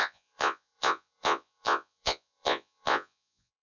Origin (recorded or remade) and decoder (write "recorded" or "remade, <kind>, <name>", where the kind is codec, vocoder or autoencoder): remade, vocoder, Vocos